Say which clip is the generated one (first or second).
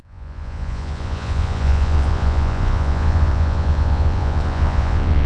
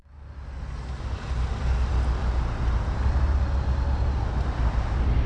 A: first